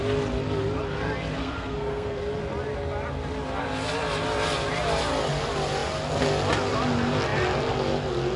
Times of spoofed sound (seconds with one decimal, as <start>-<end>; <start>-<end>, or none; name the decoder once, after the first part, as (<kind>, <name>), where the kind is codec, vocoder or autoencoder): 1.4-2.2 (codec, SNAC)